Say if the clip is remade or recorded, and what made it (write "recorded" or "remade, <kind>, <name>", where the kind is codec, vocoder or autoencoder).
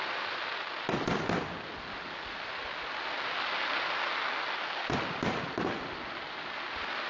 recorded